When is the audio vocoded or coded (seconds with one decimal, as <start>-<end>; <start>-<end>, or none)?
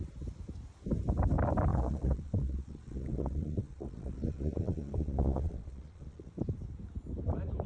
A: 1.7-6.3